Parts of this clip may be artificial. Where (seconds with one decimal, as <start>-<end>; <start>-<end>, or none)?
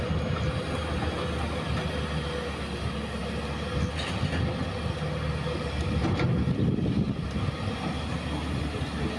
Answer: none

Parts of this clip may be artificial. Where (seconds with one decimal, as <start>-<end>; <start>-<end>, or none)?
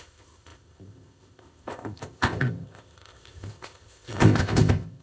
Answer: 0.0-5.0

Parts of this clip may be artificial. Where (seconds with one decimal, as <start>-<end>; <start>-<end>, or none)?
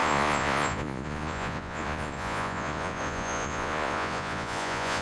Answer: 0.0-5.0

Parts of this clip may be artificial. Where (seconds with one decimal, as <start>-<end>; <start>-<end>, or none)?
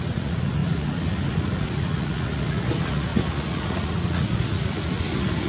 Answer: 0.0-5.5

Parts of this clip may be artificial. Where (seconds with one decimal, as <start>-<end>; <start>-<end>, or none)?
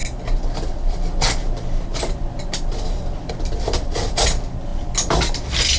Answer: none